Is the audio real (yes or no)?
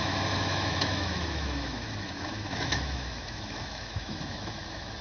no